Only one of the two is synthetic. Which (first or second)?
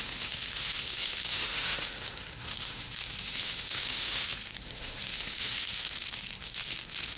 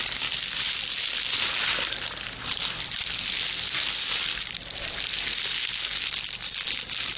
first